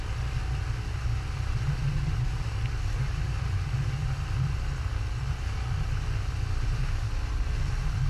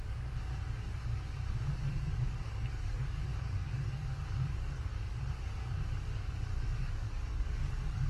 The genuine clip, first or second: first